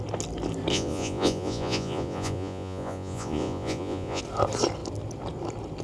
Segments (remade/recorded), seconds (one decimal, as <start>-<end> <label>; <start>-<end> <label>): 0.0-0.7 recorded; 0.7-4.2 remade; 4.2-5.8 recorded